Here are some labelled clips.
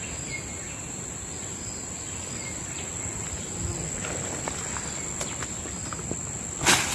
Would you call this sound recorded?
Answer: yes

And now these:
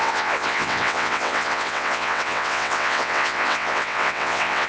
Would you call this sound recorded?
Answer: no